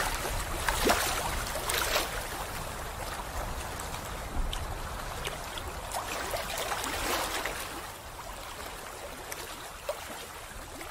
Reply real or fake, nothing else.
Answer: real